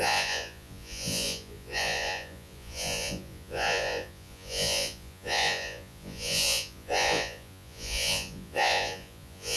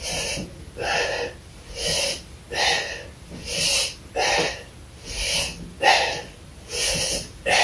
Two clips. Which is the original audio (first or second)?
second